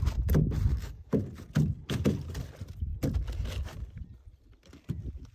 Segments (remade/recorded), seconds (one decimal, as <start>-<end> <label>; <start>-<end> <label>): 0.0-0.7 recorded; 0.7-1.2 remade; 1.2-5.3 recorded